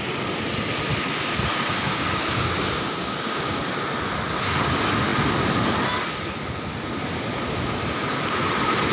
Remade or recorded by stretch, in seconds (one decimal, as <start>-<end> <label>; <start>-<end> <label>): 0.0-1.5 recorded; 1.5-3.6 remade; 3.6-8.9 recorded